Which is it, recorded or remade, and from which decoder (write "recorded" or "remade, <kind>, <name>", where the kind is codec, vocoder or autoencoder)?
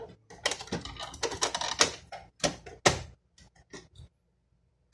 recorded